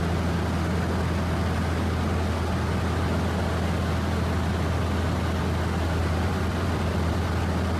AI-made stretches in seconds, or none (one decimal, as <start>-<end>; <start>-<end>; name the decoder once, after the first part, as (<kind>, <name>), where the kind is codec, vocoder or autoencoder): 6.0-7.2 (vocoder, BigVGAN v2)